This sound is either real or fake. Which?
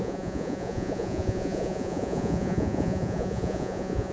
fake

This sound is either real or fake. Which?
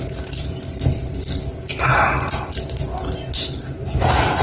real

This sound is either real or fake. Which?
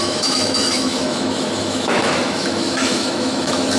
fake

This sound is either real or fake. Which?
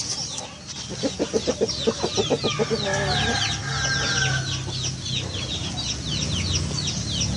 real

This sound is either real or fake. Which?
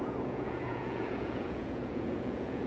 fake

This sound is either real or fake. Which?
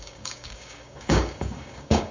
fake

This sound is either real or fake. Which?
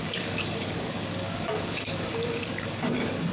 fake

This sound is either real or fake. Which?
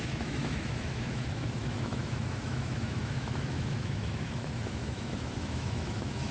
fake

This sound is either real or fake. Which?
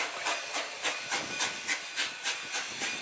real